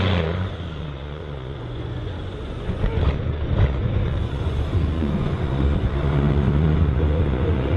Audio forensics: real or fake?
fake